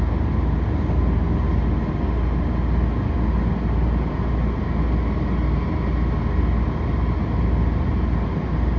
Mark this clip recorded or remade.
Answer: recorded